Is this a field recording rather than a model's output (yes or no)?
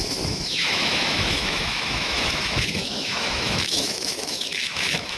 no